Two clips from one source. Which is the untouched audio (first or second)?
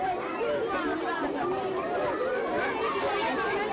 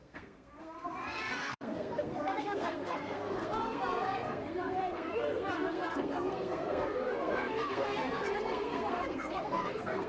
first